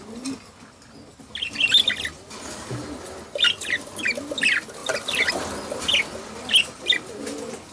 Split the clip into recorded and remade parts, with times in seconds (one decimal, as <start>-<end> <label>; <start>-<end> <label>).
0.0-7.7 recorded